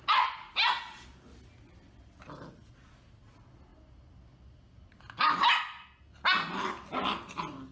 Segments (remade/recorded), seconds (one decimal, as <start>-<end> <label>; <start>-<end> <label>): 0.0-7.7 recorded